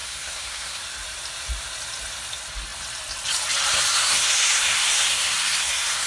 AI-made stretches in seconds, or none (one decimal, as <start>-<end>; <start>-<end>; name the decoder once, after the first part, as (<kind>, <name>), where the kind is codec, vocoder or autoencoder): 0.0-0.8 (codec, SNAC); 3.9-6.1